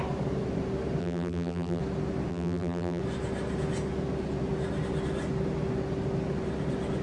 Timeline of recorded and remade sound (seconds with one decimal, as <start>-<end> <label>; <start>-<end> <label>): 0.0-1.0 recorded; 1.0-1.8 remade; 1.8-2.3 recorded; 2.3-3.0 remade; 3.0-7.0 recorded